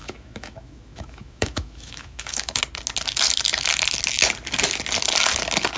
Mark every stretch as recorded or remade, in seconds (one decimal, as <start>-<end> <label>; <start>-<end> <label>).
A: 0.0-2.6 remade; 2.6-5.8 recorded